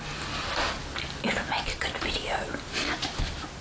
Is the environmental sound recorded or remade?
recorded